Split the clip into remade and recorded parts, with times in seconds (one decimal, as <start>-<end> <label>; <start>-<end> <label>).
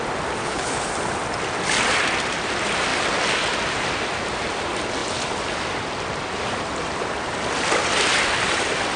0.0-0.4 recorded; 0.4-0.9 remade; 0.9-9.0 recorded